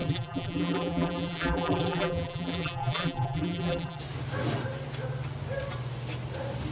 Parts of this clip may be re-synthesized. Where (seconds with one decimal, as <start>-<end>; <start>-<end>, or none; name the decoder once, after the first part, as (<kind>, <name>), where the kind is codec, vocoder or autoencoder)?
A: 0.0-4.0 (vocoder, BigVGAN v2)

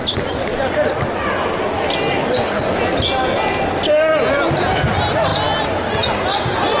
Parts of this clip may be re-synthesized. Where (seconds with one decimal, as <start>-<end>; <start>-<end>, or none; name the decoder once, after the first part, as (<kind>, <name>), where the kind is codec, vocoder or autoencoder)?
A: none

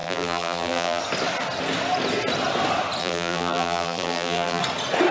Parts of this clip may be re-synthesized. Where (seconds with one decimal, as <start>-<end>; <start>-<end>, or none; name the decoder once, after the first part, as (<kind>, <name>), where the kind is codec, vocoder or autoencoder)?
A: 0.0-1.0 (vocoder, BigVGAN v2); 3.0-4.6

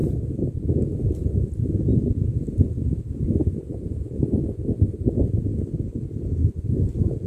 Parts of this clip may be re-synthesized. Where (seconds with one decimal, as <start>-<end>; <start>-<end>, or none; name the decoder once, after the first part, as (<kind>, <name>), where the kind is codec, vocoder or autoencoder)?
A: none

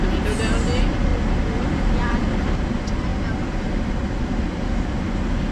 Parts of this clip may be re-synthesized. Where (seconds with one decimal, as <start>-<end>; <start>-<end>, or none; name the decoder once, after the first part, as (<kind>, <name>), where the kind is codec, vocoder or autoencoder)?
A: 1.1-2.2 (vocoder, BigVGAN v2)

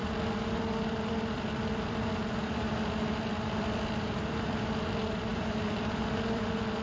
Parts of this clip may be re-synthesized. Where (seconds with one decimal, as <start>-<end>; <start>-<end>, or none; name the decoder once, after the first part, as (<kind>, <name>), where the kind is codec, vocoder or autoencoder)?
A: 0.0-6.8 (vocoder, BigVGAN v2)

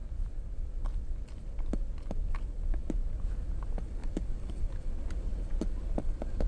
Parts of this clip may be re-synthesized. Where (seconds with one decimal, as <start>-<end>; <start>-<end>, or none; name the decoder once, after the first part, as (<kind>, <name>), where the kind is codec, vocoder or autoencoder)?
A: 0.0-0.7 (vocoder, BigVGAN v2); 2.8-3.3; 4.0-4.6

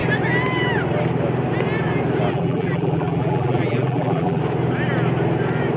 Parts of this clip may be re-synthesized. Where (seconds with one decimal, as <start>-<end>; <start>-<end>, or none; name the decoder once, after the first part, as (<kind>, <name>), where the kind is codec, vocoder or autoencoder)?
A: 2.3-4.4 (vocoder, BigVGAN v2)